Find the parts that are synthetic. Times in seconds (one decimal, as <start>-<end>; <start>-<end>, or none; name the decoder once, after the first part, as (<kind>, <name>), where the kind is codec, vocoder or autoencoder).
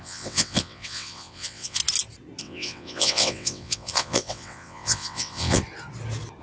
0.0-1.8 (vocoder, WaveNeXt); 2.4-5.6